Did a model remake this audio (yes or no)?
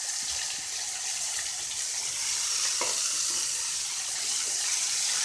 yes